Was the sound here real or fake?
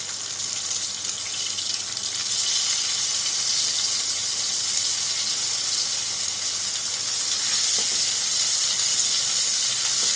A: real